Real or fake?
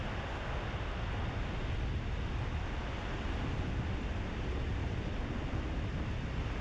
real